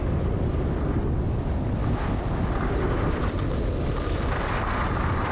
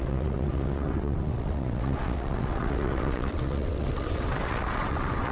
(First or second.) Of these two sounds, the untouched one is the first